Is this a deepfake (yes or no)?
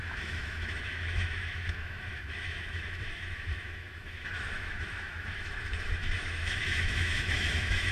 yes